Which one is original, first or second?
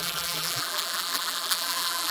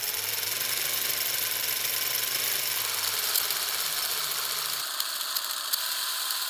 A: second